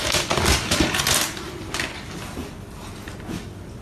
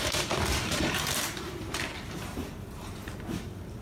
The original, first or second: first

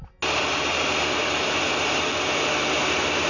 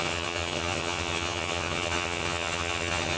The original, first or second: first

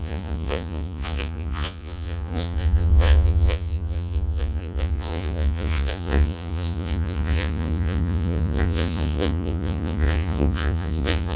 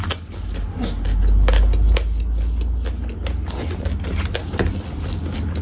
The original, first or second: second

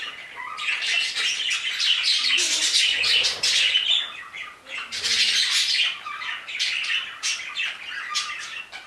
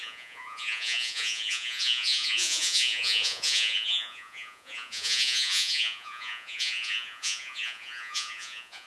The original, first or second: first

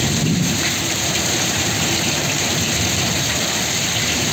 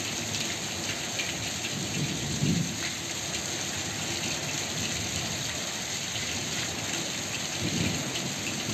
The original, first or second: second